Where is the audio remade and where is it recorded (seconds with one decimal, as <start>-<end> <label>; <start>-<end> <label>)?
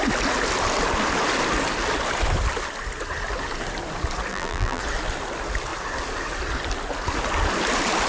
0.0-4.3 recorded; 4.3-4.8 remade; 4.8-8.1 recorded